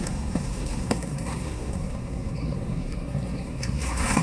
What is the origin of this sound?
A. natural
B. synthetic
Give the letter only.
B